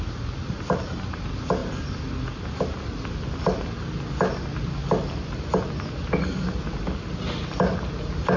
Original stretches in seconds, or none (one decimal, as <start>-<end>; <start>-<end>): 0.0-8.4